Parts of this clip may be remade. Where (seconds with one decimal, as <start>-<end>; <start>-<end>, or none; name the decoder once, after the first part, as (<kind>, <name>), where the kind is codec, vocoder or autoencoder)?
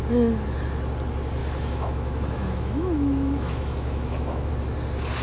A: 1.4-4.5 (autoencoder, DAC-VAE)